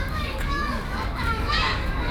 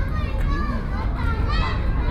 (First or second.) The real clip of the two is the second